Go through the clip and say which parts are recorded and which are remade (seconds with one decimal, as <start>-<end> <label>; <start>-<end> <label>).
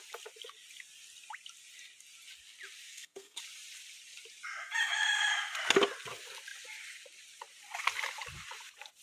0.0-2.9 recorded; 2.9-3.4 remade; 3.4-9.0 recorded